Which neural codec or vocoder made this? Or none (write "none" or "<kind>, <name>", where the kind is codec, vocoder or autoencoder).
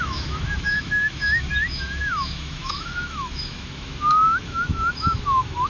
autoencoder, DAC-VAE